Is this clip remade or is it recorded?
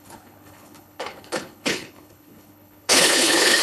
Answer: remade